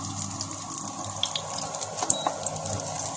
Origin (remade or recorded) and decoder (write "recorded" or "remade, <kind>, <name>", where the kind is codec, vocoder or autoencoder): recorded